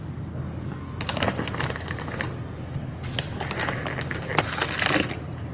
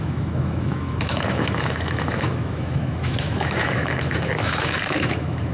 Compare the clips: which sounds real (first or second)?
first